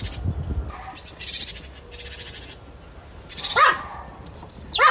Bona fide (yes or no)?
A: yes